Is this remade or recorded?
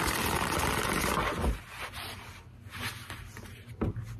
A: recorded